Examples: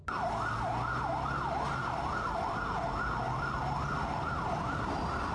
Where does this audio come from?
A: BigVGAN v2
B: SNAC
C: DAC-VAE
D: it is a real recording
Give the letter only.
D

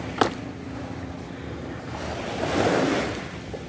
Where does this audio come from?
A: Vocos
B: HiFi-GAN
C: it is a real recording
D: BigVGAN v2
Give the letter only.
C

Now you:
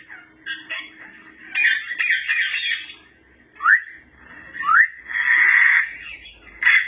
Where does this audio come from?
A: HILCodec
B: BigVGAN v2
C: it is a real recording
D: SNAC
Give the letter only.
C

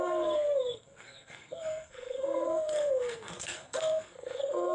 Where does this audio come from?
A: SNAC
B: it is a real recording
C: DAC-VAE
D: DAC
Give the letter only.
A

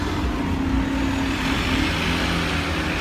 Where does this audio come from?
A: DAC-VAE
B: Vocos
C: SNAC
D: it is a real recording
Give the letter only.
D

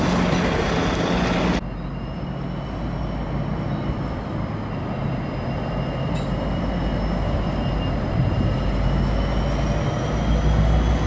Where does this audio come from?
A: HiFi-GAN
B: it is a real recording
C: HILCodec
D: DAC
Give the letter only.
B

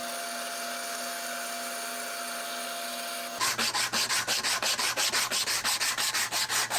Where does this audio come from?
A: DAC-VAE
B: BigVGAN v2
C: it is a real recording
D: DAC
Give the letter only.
C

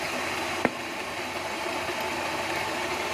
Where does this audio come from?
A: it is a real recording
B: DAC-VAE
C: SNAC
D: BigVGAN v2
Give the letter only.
A